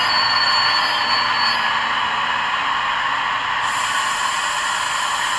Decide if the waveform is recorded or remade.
recorded